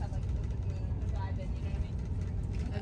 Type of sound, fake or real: real